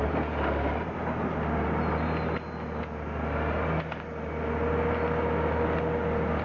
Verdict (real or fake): real